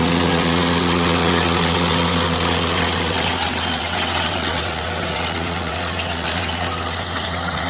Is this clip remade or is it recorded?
remade